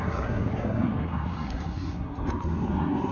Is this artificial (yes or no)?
yes